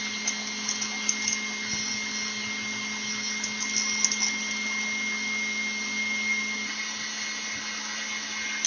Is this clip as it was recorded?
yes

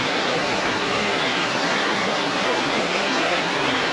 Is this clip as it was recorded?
no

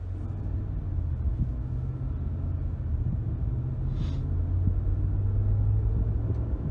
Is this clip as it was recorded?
yes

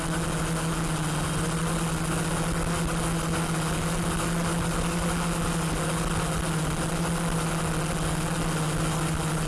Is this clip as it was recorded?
yes